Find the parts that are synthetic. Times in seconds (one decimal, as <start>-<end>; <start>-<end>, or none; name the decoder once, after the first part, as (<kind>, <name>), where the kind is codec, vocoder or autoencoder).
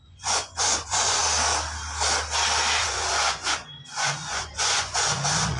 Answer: 0.0-1.2 (vocoder, Vocos); 2.8-5.6